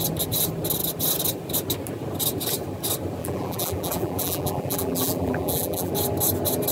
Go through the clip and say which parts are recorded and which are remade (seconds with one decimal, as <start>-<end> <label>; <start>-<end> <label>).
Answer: 0.0-3.2 recorded; 3.2-5.9 remade; 5.9-6.7 recorded